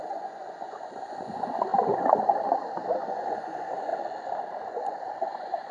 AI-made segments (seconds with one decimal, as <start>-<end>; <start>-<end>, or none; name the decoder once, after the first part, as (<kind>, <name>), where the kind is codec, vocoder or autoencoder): 0.0-1.7 (vocoder, Vocos); 3.0-3.9; 4.7-5.7